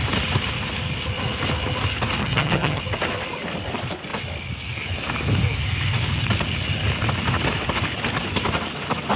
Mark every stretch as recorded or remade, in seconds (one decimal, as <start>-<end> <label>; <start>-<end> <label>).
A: 0.0-2.2 recorded; 2.2-2.8 remade; 2.8-9.2 recorded